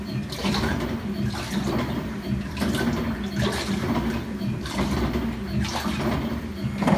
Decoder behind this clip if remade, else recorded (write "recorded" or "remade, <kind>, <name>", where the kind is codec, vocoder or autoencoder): recorded